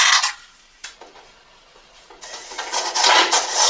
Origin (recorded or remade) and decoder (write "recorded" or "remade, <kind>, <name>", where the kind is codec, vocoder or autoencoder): remade, vocoder, Vocos